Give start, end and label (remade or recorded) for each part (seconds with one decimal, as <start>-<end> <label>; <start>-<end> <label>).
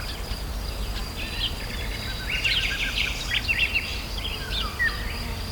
0.0-5.5 recorded